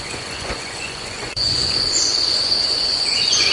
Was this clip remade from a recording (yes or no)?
yes